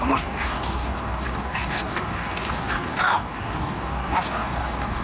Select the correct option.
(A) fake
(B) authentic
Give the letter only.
A